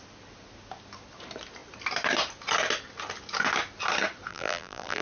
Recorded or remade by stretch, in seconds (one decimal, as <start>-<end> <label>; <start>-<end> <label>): 0.0-4.3 recorded; 4.3-5.0 remade